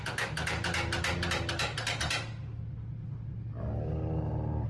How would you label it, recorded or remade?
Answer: recorded